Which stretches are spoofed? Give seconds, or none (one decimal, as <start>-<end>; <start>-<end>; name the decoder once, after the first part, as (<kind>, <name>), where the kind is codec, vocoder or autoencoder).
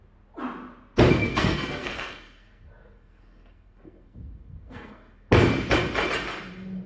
1.2-5.3 (codec, SNAC)